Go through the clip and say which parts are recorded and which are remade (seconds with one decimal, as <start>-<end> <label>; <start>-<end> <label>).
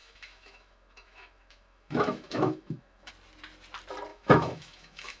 0.0-3.1 remade; 3.1-4.1 recorded; 4.1-5.2 remade